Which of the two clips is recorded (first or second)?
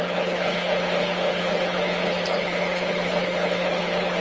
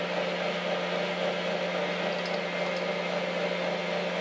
second